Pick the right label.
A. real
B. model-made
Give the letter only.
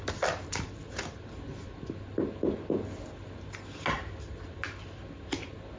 A